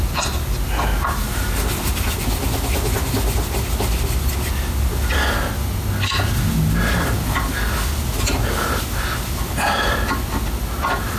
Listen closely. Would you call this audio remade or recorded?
recorded